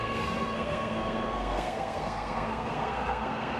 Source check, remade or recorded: remade